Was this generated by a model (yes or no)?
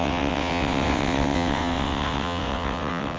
yes